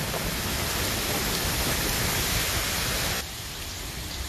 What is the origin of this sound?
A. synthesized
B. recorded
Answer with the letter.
B